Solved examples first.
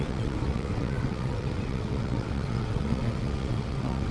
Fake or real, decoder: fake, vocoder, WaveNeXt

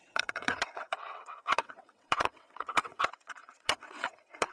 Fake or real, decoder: fake, vocoder, WaveNeXt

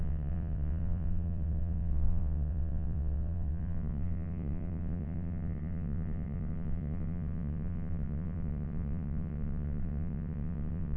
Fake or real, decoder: fake, vocoder, WaveNeXt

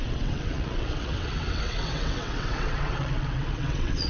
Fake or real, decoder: fake, vocoder, WaveNeXt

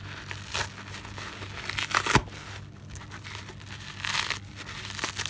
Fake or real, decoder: real